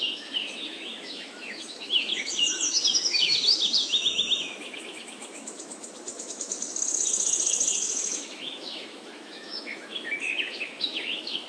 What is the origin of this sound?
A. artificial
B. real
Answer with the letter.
A